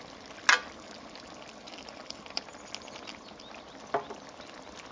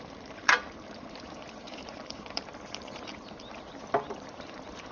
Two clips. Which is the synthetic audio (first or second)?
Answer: second